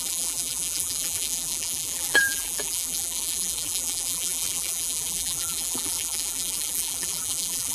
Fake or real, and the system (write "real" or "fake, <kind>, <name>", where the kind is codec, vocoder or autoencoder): fake, vocoder, BigVGAN v2